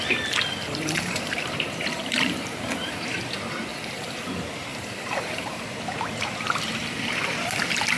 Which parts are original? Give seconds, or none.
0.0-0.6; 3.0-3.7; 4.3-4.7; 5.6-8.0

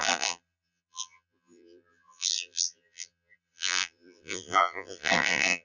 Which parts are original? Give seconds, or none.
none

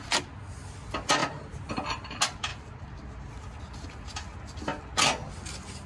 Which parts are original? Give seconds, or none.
0.0-5.9

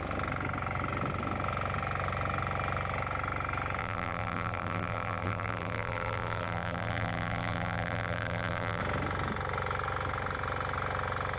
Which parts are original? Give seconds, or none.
0.0-3.8; 8.8-11.4

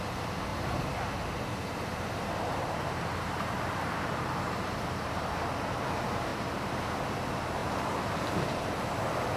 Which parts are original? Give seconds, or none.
0.0-0.5; 5.4-6.3; 7.1-7.6; 8.9-9.4

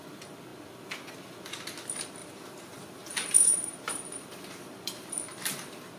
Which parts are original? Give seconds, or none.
0.0-2.2

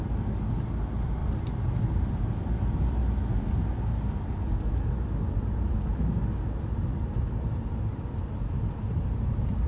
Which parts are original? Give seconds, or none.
3.0-6.9